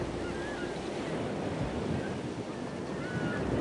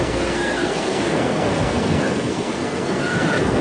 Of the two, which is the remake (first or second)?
second